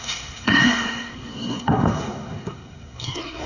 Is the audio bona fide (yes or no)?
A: no